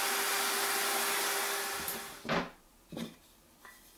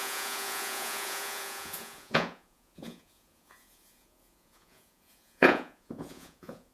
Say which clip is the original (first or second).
first